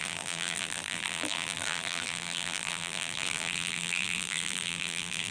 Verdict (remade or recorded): remade